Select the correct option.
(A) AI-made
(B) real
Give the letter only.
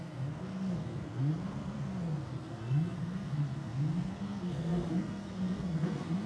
A